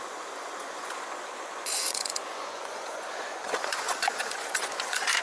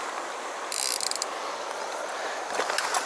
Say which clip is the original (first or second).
second